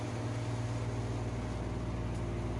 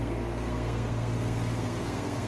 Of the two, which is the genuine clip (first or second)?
first